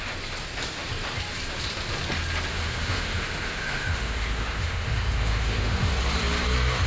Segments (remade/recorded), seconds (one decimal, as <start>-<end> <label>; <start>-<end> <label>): 0.0-2.5 recorded; 2.5-5.9 remade; 5.9-6.9 recorded